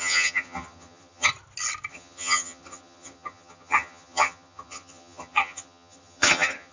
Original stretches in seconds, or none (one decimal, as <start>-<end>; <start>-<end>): 1.3-1.9